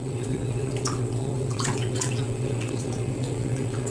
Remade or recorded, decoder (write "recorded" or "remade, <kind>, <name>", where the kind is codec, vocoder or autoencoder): remade, vocoder, WaveNeXt